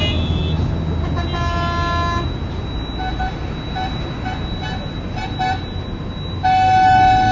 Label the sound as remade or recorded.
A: recorded